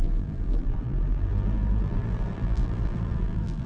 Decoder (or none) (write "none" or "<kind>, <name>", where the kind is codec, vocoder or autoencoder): vocoder, BigVGAN v2